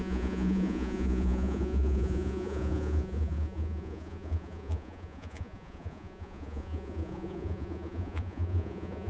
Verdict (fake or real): fake